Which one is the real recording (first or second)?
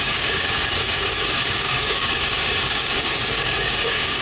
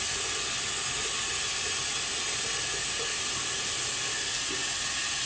second